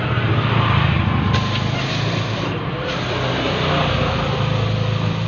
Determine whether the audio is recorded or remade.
recorded